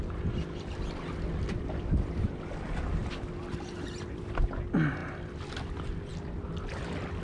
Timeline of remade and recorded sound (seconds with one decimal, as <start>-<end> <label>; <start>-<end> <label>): 0.0-7.2 recorded